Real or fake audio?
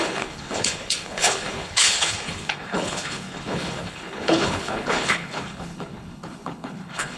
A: fake